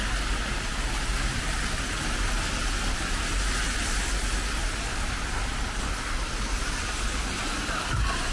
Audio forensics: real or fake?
real